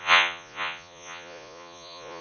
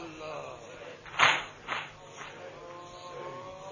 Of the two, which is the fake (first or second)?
first